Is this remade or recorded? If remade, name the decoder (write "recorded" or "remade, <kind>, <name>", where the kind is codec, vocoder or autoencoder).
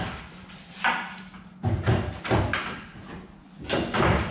recorded